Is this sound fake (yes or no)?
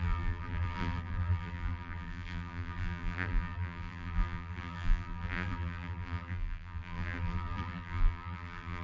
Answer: yes